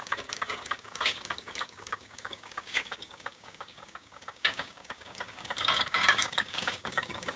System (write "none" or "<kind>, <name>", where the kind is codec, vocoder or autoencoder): codec, DAC